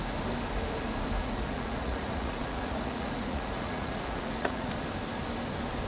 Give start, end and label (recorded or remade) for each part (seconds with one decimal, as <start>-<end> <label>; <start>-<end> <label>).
0.0-1.2 recorded; 1.2-4.7 remade; 4.7-5.9 recorded

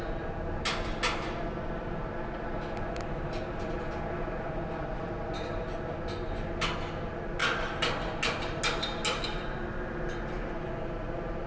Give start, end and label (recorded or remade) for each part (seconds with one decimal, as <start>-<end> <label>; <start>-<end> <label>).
0.0-11.5 recorded

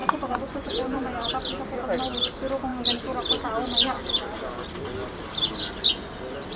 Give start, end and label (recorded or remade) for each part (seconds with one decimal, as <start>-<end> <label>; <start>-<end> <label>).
0.0-1.3 remade; 1.3-6.6 recorded

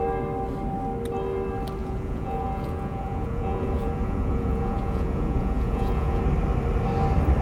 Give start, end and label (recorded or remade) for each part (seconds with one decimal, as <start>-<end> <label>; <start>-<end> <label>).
0.0-1.8 recorded; 1.8-6.2 remade; 6.2-7.4 recorded

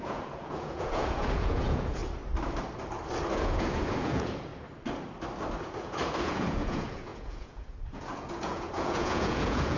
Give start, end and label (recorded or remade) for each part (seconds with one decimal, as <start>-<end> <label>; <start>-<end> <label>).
0.0-2.0 remade; 2.0-3.3 recorded; 3.3-4.5 remade; 4.5-5.6 recorded; 5.6-9.8 remade

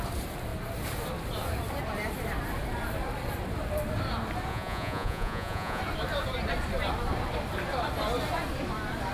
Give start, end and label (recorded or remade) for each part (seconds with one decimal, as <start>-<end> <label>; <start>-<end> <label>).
0.0-4.5 recorded; 4.5-5.8 remade; 5.8-9.1 recorded

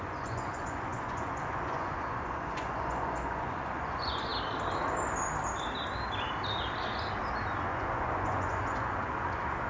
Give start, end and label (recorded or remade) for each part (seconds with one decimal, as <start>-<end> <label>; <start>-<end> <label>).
0.0-4.3 remade; 4.3-7.6 recorded; 7.6-9.7 remade

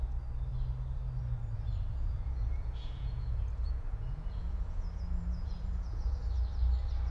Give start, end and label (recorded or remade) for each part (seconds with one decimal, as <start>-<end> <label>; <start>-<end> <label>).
0.0-1.9 recorded; 1.9-6.2 remade; 6.2-7.1 recorded